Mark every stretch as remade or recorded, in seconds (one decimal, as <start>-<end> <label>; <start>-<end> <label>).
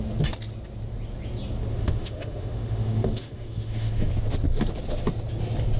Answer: 0.0-1.7 recorded; 1.7-4.1 remade; 4.1-5.8 recorded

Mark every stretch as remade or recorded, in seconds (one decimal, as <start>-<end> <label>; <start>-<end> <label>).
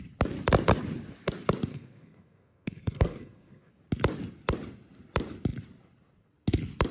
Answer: 0.0-1.7 recorded; 1.7-3.7 remade; 3.7-6.9 recorded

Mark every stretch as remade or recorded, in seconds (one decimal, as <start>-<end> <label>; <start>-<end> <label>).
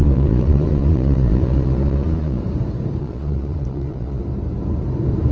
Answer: 0.0-2.4 remade; 2.4-3.0 recorded; 3.0-4.2 remade; 4.2-5.3 recorded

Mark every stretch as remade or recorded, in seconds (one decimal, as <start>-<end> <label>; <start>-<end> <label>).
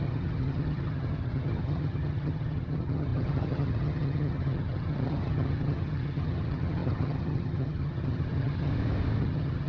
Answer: 0.0-8.7 remade; 8.7-9.2 recorded; 9.2-9.7 remade